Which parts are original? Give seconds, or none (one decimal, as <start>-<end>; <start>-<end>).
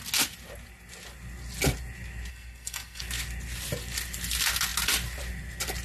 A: 0.0-2.3; 3.0-5.8